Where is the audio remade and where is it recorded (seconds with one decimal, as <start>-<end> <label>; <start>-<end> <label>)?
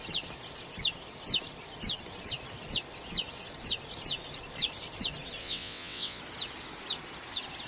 0.0-5.4 recorded; 5.4-6.2 remade; 6.2-7.7 recorded